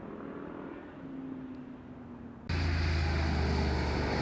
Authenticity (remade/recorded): recorded